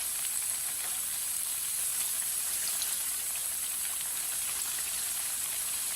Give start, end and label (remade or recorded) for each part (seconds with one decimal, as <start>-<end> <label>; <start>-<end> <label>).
0.0-1.9 recorded; 1.9-3.2 remade; 3.2-4.3 recorded; 4.3-6.0 remade